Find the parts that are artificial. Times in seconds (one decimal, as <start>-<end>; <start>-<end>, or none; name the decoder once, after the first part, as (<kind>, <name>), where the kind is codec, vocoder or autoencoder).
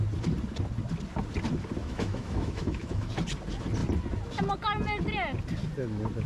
1.8-3.1 (autoencoder, DAC-VAE)